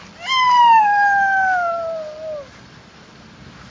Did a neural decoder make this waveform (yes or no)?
no